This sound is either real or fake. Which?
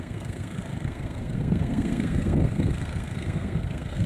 fake